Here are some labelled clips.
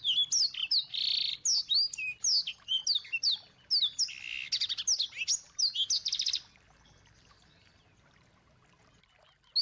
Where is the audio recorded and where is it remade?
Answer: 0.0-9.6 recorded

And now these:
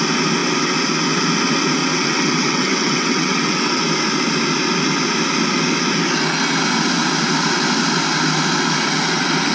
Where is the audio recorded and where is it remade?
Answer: 0.0-1.8 recorded; 1.8-3.8 remade; 3.8-9.5 recorded

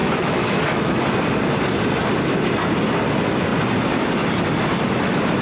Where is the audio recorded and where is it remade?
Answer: 0.0-1.0 remade; 1.0-5.4 recorded

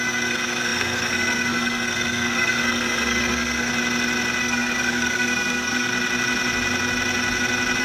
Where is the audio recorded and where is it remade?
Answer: 0.0-3.7 remade; 3.7-4.4 recorded; 4.4-5.9 remade; 5.9-7.8 recorded

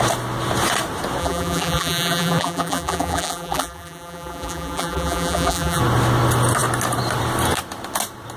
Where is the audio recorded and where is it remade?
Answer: 0.0-1.2 recorded; 1.2-5.8 remade; 5.8-8.4 recorded

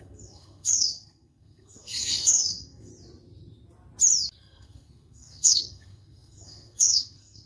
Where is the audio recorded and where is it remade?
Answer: 0.0-2.9 remade; 2.9-4.3 recorded; 4.3-7.5 remade

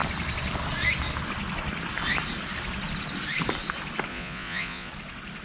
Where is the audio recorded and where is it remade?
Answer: 0.0-4.1 recorded; 4.1-4.9 remade; 4.9-5.4 recorded